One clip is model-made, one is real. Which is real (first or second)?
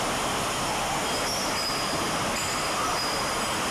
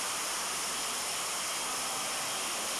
first